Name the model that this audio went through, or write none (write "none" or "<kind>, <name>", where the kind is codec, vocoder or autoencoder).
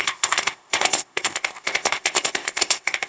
codec, ZipCodec